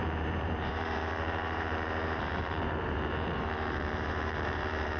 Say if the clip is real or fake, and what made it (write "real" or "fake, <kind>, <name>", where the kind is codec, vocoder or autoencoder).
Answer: fake, vocoder, BigVGAN v2